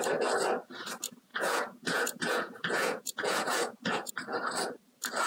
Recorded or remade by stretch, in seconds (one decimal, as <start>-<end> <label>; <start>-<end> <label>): 0.0-1.3 recorded; 1.3-4.1 remade; 4.1-5.3 recorded